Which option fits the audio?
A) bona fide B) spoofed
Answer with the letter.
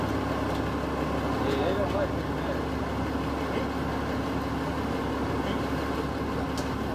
A